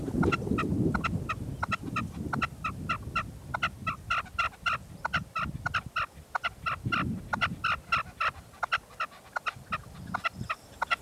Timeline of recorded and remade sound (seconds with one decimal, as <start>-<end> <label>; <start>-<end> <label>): 0.0-11.0 recorded